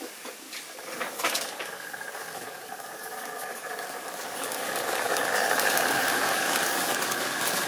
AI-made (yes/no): yes